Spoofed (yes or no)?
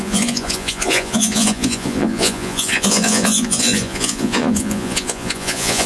yes